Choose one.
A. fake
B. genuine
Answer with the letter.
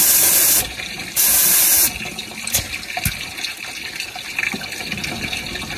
B